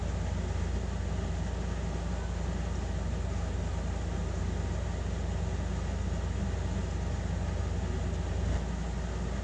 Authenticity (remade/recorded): recorded